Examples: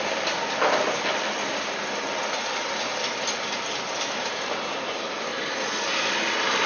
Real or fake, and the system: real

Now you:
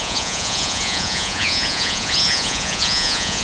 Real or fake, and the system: fake, vocoder, Vocos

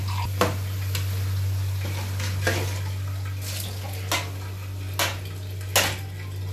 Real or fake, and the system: real